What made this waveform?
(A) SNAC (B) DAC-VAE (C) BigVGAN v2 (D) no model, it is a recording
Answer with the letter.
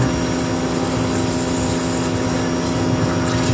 D